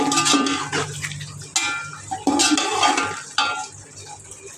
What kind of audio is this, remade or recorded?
recorded